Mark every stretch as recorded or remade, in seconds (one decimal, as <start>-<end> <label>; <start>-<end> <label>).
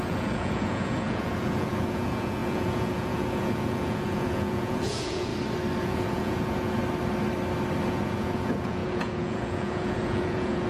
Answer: 0.0-5.3 remade; 5.3-5.8 recorded; 5.8-6.8 remade; 6.8-7.9 recorded; 7.9-10.7 remade